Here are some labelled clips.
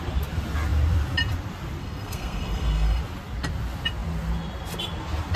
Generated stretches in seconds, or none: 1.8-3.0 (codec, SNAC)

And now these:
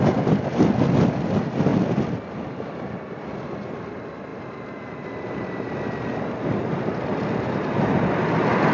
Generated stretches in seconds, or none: none

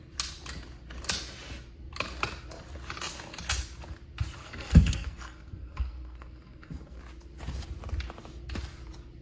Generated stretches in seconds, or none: 4.4-7.0 (codec, SNAC)

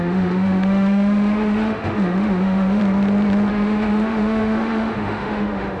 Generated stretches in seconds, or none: 0.0-2.8 (autoencoder, DAC-VAE); 3.5-5.8

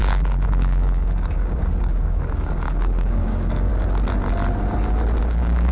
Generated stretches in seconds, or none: 0.0-3.7 (codec, DAC); 5.2-5.7